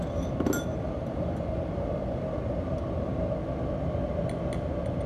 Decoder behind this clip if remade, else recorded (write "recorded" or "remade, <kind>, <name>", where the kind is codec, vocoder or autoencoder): recorded